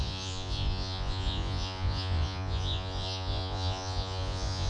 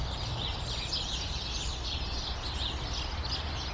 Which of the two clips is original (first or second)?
second